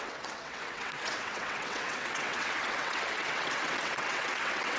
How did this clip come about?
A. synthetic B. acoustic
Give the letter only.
A